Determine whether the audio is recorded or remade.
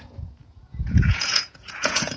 remade